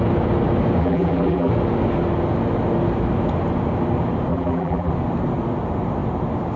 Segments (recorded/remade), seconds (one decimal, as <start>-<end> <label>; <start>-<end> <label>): 0.0-0.8 recorded; 0.8-1.5 remade; 1.5-4.3 recorded; 4.3-4.9 remade; 4.9-6.6 recorded